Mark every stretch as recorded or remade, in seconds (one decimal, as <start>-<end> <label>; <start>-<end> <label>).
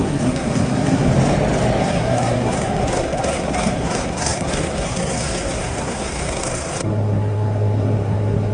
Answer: 0.0-1.1 remade; 1.1-1.8 recorded; 1.8-8.5 remade